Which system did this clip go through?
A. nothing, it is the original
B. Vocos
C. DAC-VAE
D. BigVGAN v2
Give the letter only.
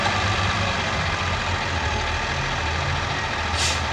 A